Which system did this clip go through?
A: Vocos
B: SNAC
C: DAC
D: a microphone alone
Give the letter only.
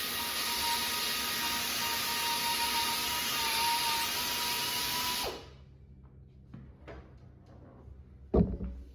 D